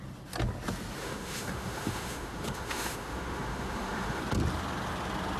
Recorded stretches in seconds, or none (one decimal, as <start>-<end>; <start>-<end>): 0.0-1.0; 4.2-5.4